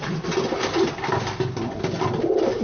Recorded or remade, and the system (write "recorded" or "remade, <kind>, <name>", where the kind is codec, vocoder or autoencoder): recorded